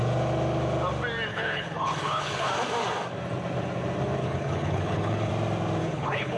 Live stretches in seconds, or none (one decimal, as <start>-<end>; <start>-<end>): 0.0-1.3; 2.5-4.2; 5.3-5.8